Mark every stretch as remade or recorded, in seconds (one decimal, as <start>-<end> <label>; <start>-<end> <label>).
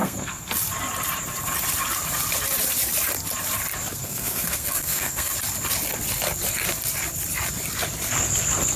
0.0-0.5 remade; 0.5-3.9 recorded; 3.9-5.3 remade; 5.3-8.8 recorded